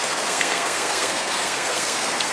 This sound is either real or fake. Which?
fake